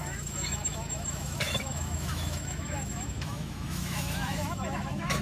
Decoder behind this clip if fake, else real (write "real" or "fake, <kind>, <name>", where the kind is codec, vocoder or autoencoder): fake, autoencoder, DAC-VAE